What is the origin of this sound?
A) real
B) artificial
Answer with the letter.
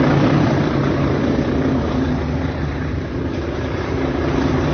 B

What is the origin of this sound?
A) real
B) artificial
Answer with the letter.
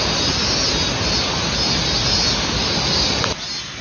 A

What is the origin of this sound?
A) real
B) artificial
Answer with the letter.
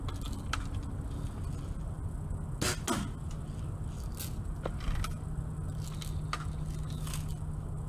A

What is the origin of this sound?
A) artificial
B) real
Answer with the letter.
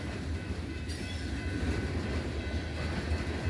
B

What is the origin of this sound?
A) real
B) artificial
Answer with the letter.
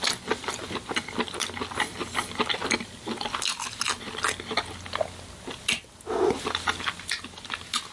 A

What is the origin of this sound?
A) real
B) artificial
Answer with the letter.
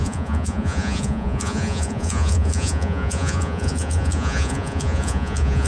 B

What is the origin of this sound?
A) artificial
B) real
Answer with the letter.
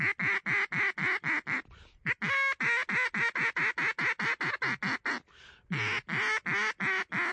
B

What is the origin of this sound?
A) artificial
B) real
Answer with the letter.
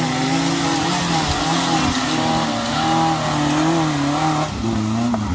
B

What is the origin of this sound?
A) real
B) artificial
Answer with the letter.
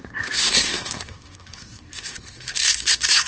B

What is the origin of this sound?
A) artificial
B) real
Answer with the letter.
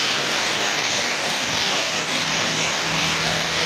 A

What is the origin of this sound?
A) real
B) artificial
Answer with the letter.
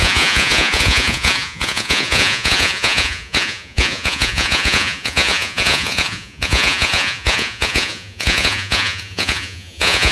B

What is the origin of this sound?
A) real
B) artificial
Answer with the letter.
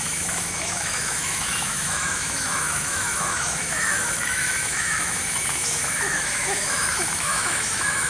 B